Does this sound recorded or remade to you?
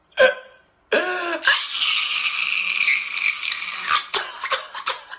recorded